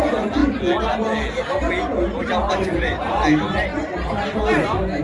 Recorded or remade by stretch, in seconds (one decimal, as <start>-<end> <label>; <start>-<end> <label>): 0.0-0.4 remade; 0.4-2.5 recorded; 2.5-3.7 remade; 3.7-5.0 recorded